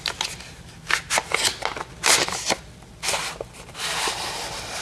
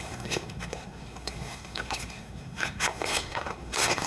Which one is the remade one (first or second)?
second